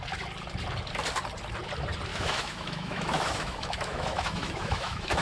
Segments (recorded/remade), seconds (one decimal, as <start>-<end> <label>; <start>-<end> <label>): 0.0-2.1 recorded; 2.1-5.2 remade